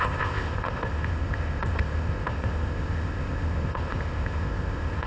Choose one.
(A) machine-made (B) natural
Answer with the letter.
A